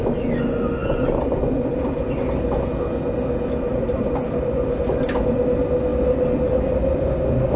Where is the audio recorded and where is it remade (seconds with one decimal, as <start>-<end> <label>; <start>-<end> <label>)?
0.0-7.6 recorded